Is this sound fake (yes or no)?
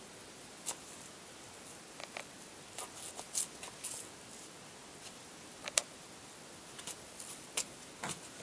no